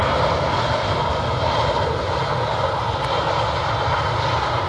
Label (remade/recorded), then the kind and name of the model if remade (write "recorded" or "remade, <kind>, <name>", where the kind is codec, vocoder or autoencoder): recorded